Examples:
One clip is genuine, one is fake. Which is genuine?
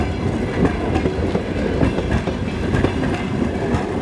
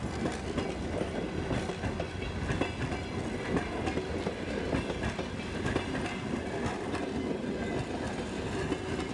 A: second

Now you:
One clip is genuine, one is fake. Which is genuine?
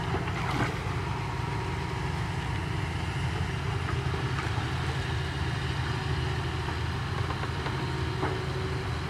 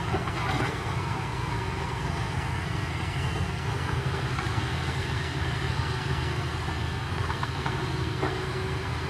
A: first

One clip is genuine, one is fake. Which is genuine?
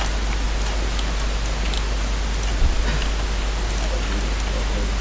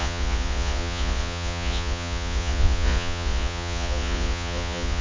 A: first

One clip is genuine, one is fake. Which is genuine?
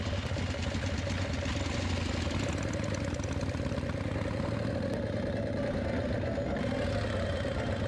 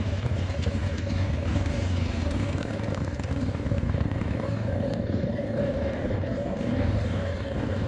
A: first